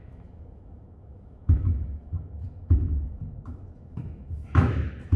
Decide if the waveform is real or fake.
fake